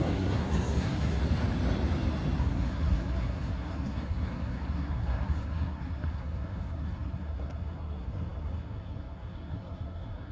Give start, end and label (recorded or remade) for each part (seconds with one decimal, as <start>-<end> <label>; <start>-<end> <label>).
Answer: 0.0-1.2 remade; 1.2-2.4 recorded; 2.4-10.3 remade